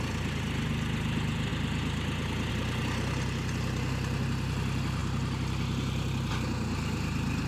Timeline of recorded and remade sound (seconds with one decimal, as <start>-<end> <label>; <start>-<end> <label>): 0.0-7.5 recorded